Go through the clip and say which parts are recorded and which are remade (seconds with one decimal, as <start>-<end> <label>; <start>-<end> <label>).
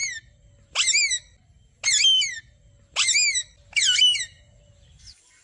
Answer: 0.0-5.4 recorded